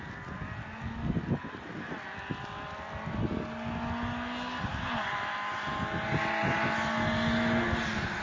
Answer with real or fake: real